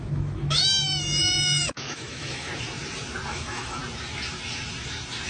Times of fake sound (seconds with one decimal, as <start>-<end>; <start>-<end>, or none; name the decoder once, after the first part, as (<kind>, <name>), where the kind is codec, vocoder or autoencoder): 0.0-2.5 (autoencoder, DAC-VAE); 3.3-3.8